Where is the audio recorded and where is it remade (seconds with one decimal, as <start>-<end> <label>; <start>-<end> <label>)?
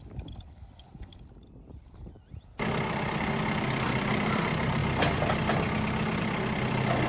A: 0.0-4.8 remade; 4.8-6.2 recorded; 6.2-7.1 remade